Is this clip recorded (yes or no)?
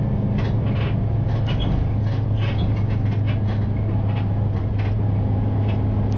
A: yes